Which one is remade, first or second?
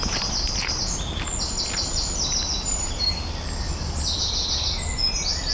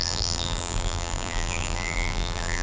second